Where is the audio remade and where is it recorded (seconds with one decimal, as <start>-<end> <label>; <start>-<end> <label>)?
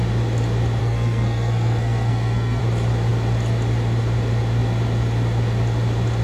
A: 0.0-0.8 recorded; 0.8-2.6 remade; 2.6-6.2 recorded